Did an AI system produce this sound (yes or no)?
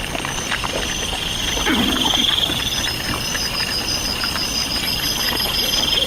yes